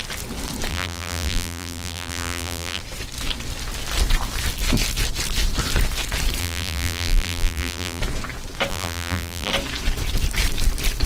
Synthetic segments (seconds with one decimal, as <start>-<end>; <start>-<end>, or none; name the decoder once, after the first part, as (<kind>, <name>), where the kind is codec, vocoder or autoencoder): 0.7-2.8 (vocoder, BigVGAN v2); 6.4-8.0; 8.7-9.5